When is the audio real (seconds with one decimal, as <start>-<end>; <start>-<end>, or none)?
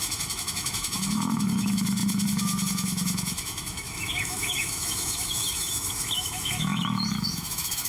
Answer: none